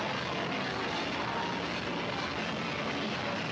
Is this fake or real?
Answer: real